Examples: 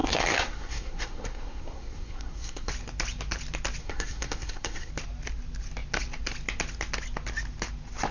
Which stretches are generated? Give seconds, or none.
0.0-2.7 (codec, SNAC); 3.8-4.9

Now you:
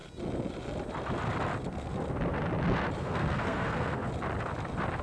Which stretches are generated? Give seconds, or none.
3.0-4.1 (codec, SNAC)

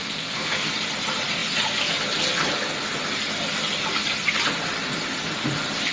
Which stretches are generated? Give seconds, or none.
0.0-0.7 (codec, SNAC)